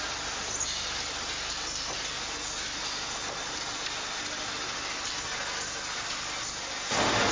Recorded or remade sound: recorded